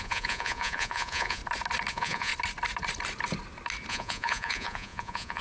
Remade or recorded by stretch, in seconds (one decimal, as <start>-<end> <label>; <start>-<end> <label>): 0.0-1.4 remade; 1.4-1.9 recorded; 1.9-2.3 remade; 2.3-3.9 recorded; 3.9-5.4 remade